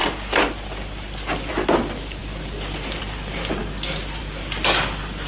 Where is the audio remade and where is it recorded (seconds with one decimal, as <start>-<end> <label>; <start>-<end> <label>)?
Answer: 0.0-5.3 recorded